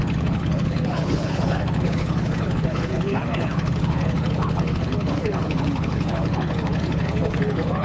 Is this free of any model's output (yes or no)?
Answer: no